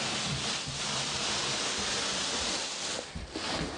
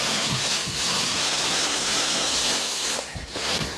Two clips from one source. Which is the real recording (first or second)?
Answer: first